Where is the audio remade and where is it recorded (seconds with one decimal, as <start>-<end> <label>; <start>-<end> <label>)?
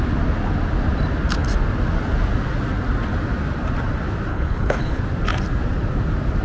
0.0-4.3 recorded; 4.3-5.0 remade; 5.0-6.4 recorded